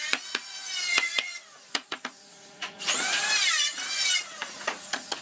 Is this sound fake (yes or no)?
yes